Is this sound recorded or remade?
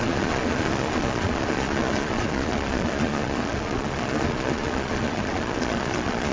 remade